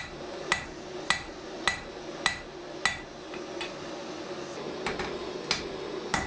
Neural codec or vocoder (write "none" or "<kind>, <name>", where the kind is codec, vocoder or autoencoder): none